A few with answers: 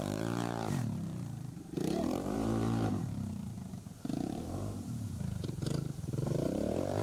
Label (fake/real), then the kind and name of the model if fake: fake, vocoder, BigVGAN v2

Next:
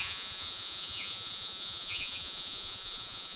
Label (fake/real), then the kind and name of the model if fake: fake, vocoder, Vocos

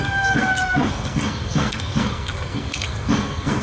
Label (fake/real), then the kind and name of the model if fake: fake, codec, SNAC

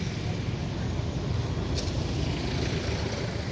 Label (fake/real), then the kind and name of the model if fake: real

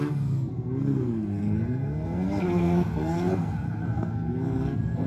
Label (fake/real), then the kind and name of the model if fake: fake, codec, SNAC